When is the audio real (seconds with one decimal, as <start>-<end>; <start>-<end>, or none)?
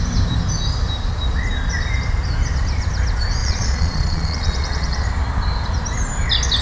0.0-3.4; 5.1-6.6